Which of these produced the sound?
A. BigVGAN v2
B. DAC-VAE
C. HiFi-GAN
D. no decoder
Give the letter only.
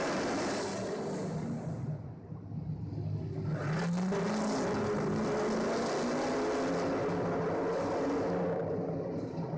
D